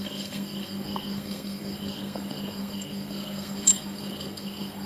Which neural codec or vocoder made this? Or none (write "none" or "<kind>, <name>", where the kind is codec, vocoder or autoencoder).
codec, SNAC